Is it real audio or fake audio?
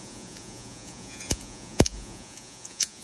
fake